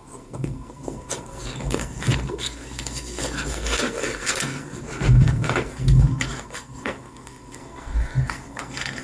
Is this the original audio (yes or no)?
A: no